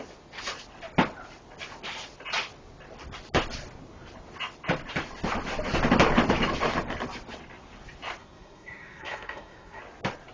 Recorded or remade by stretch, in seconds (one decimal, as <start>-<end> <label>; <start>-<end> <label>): 0.0-8.2 recorded; 8.2-9.8 remade; 9.8-10.3 recorded